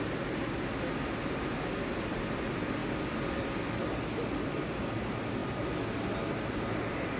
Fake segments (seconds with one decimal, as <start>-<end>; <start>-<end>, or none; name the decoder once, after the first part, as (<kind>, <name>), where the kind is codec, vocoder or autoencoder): none